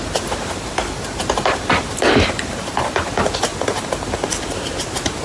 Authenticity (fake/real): real